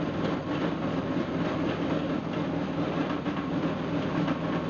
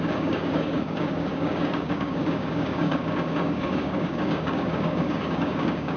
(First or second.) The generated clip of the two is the second